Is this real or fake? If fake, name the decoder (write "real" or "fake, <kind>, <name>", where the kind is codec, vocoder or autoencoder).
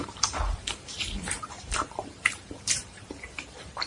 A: fake, vocoder, BigVGAN v2